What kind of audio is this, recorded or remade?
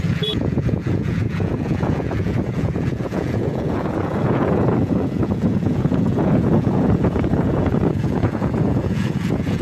remade